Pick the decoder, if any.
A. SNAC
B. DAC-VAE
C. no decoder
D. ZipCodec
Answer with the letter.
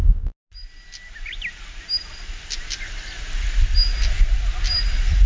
C